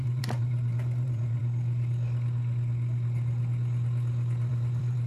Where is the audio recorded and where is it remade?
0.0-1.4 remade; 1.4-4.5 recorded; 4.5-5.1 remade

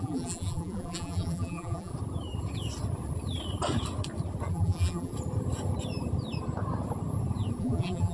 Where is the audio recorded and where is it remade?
0.0-1.9 remade; 1.9-4.5 recorded; 4.5-5.1 remade; 5.1-7.6 recorded; 7.6-8.1 remade

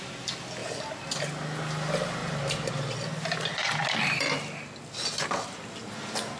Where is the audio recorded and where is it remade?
0.0-6.4 recorded